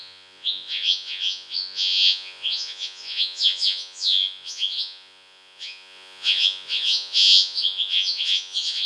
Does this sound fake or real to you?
fake